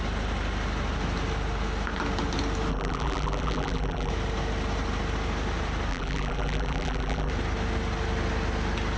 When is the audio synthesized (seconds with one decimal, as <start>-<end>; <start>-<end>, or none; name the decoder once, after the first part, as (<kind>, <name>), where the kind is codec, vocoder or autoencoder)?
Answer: 2.7-4.1 (vocoder, BigVGAN v2); 5.9-7.3